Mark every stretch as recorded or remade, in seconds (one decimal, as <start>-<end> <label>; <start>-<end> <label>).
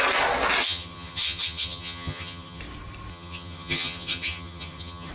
0.0-0.6 recorded; 0.6-2.6 remade; 2.6-3.1 recorded; 3.1-5.1 remade